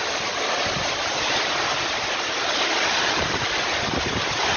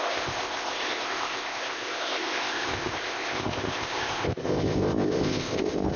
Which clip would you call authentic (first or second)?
first